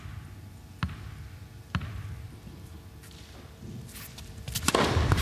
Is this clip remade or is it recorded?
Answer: recorded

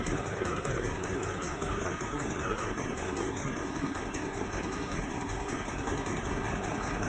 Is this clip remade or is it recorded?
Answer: remade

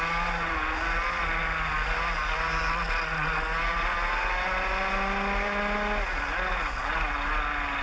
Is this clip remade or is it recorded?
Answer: recorded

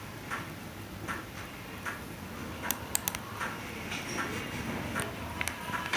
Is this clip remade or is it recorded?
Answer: recorded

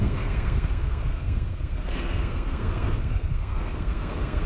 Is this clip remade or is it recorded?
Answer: remade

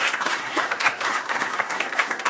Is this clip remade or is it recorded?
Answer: remade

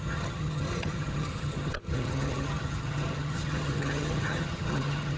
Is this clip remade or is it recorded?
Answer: remade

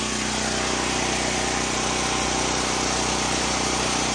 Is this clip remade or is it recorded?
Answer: recorded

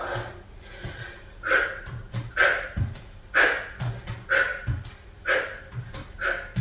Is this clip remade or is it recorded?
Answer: recorded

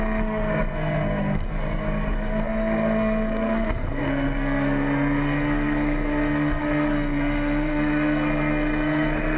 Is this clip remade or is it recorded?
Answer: remade